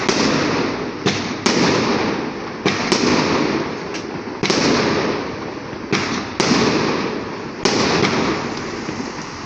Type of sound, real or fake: real